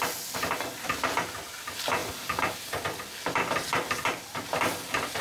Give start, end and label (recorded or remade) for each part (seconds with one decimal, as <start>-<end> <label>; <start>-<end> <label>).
0.0-5.2 recorded